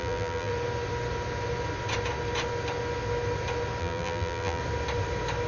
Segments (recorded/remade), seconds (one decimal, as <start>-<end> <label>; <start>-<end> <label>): 0.0-0.5 remade; 0.5-3.8 recorded; 3.8-4.6 remade; 4.6-5.5 recorded